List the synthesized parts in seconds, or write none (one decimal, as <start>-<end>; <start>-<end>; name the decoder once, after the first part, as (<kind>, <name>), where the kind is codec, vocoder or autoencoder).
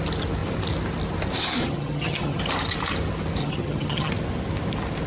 1.6-2.4 (vocoder, HiFi-GAN); 3.4-4.1